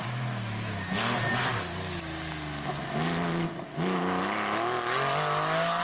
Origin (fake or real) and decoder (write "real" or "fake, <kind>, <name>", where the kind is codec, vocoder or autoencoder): real